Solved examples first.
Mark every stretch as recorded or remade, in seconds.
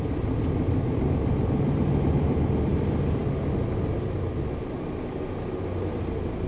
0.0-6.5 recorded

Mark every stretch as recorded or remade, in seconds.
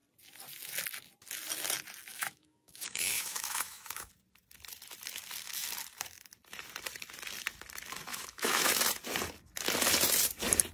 0.0-2.1 recorded; 2.1-4.1 remade; 4.1-8.1 recorded; 8.1-8.7 remade; 8.7-10.7 recorded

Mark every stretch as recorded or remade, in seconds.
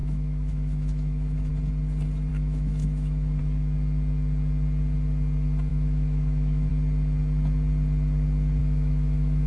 0.0-1.5 remade; 1.5-2.3 recorded; 2.3-3.4 remade; 3.4-5.7 recorded; 5.7-6.7 remade; 6.7-8.6 recorded; 8.6-9.5 remade